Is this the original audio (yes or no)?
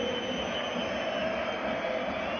yes